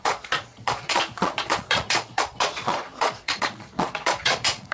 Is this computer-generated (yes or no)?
yes